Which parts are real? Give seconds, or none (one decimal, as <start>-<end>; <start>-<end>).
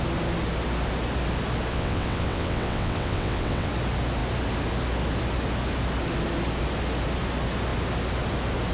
0.0-1.7; 3.7-8.7